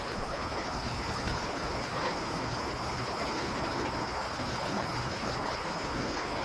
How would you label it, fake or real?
fake